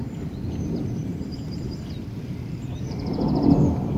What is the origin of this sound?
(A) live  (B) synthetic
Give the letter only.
B